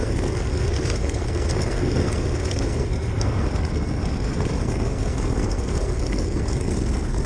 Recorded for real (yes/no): no